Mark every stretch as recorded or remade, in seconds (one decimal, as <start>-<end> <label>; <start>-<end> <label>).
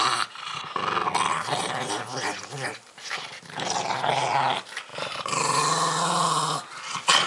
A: 0.0-1.3 recorded; 1.3-4.1 remade; 4.1-4.9 recorded; 4.9-5.6 remade; 5.6-7.3 recorded